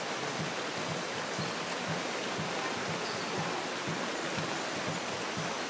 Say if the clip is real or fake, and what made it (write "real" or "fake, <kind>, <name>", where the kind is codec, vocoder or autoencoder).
real